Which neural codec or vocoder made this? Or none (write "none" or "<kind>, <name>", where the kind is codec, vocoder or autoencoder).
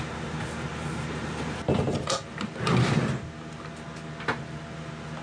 none